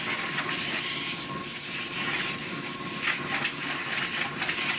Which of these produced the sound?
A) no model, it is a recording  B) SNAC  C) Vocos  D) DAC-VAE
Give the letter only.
A